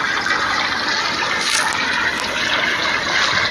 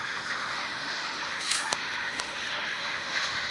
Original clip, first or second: first